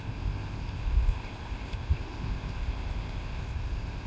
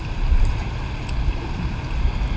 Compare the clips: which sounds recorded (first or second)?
second